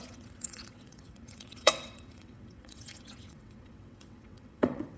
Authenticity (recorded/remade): remade